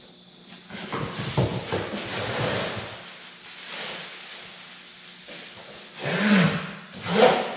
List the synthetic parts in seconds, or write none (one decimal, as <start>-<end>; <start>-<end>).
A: none